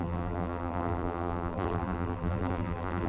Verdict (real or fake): fake